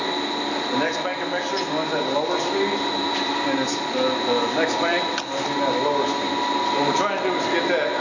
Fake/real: real